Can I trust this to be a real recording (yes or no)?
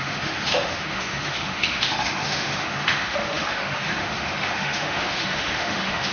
no